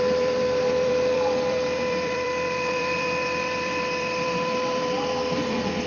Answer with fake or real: fake